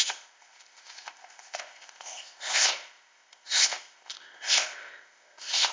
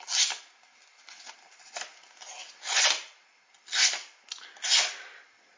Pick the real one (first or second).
second